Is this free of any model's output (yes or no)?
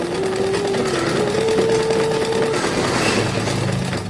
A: yes